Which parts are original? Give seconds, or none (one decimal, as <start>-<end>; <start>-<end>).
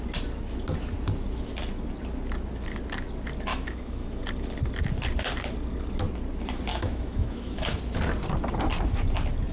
0.0-3.5; 4.2-6.7; 7.8-9.5